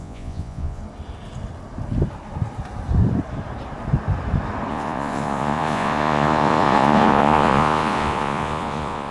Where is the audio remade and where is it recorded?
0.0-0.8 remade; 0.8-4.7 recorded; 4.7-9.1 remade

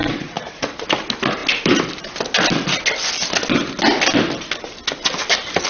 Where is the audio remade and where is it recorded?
0.0-0.8 remade; 0.8-5.7 recorded

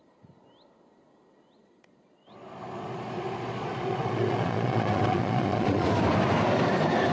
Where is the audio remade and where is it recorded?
0.0-1.6 recorded; 1.6-5.9 remade; 5.9-7.1 recorded

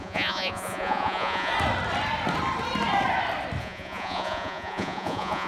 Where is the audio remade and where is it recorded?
0.0-1.5 remade; 1.5-3.6 recorded; 3.6-5.5 remade

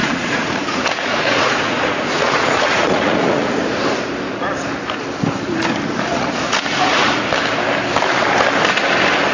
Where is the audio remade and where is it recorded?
0.0-3.5 remade; 3.5-6.1 recorded; 6.1-7.3 remade; 7.3-9.3 recorded